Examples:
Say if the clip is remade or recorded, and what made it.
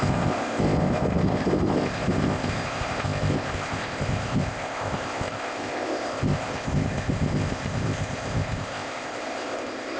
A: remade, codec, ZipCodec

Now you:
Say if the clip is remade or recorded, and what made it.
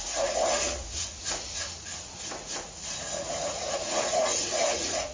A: remade, vocoder, Vocos